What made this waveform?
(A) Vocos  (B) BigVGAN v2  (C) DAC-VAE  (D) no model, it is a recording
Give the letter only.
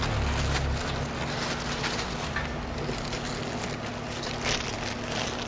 D